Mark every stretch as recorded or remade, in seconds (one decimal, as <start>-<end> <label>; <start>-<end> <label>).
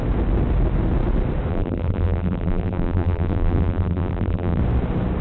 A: 0.0-1.5 recorded; 1.5-4.6 remade; 4.6-5.2 recorded